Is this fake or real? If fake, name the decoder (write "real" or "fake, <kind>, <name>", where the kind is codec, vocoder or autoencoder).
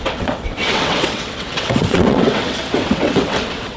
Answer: fake, vocoder, WaveNeXt